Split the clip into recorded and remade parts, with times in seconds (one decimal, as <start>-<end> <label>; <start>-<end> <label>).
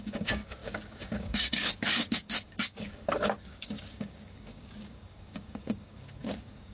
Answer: 0.0-6.7 remade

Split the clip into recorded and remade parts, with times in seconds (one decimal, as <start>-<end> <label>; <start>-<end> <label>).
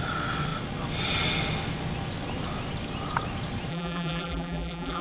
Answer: 0.0-3.7 recorded; 3.7-5.0 remade